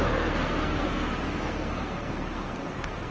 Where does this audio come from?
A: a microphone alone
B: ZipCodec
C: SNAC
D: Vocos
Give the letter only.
C